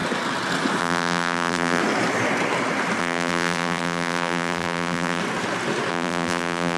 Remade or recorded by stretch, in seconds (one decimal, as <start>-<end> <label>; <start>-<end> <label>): 0.0-0.8 recorded; 0.8-1.8 remade; 1.8-3.0 recorded; 3.0-5.2 remade; 5.2-5.9 recorded; 5.9-6.8 remade